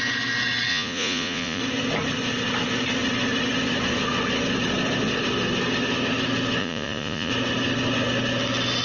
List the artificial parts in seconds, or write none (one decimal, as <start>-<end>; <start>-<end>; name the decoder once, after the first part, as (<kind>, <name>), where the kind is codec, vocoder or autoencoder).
0.7-1.6 (vocoder, Vocos); 6.6-7.3